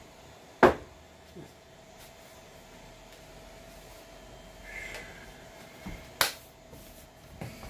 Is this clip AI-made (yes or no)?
no